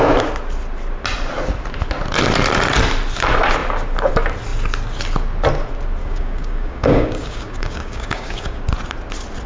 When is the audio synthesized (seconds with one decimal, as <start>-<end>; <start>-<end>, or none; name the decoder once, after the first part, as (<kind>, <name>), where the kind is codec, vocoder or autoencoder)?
6.0-8.6 (codec, DAC)